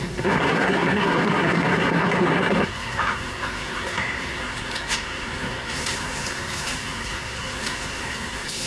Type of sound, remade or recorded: remade